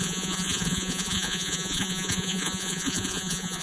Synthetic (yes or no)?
yes